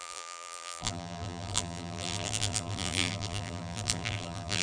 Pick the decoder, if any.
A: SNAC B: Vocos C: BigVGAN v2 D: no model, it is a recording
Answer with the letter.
C